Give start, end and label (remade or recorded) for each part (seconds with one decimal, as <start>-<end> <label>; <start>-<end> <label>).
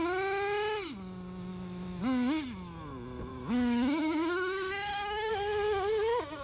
0.0-1.5 recorded; 1.5-2.0 remade; 2.0-3.3 recorded; 3.3-5.3 remade; 5.3-6.4 recorded